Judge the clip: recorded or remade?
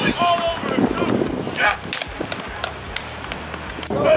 recorded